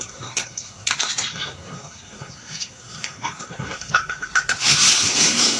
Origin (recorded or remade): remade